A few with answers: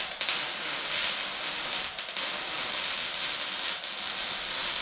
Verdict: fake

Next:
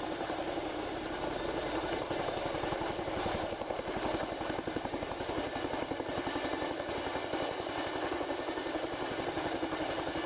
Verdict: real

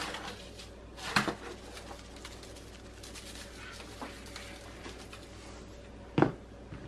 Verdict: real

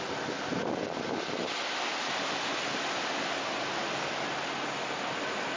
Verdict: real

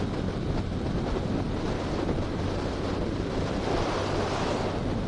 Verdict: real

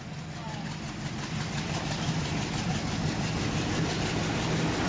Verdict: real